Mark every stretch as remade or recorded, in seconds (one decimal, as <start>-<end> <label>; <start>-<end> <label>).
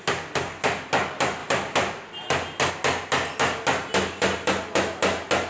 0.0-5.5 recorded